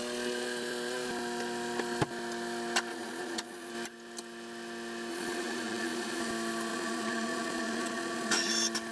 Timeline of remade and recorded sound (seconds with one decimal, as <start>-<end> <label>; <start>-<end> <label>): 0.0-2.9 recorded; 2.9-3.7 remade; 3.7-5.1 recorded; 5.1-6.3 remade; 6.3-6.7 recorded; 6.7-8.5 remade; 8.5-8.9 recorded